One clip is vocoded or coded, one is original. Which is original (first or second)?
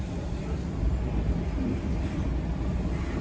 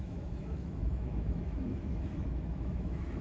first